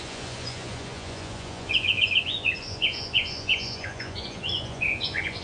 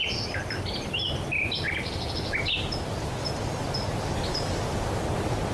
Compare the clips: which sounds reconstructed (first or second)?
first